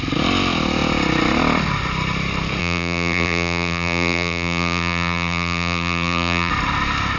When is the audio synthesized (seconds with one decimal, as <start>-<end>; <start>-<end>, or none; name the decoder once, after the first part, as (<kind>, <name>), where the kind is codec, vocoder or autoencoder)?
2.6-6.5 (vocoder, BigVGAN v2)